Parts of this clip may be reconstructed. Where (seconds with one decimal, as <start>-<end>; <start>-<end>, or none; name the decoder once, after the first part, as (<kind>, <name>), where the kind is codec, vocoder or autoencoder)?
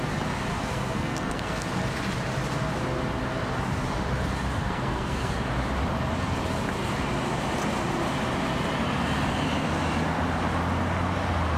0.5-1.6 (codec, SNAC); 4.6-5.3